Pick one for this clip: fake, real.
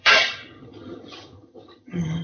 fake